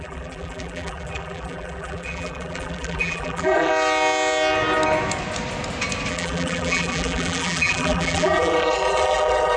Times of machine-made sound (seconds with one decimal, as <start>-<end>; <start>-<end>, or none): 0.0-3.7; 6.1-9.6